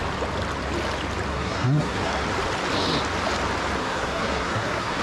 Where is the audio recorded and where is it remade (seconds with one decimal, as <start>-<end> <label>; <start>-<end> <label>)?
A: 0.0-1.3 recorded; 1.3-2.1 remade; 2.1-3.8 recorded; 3.8-5.0 remade